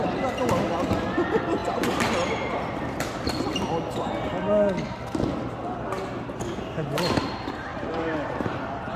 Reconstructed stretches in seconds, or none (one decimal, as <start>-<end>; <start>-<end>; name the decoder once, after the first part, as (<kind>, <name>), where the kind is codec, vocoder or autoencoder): 1.6-2.5 (vocoder, BigVGAN v2); 7.7-8.6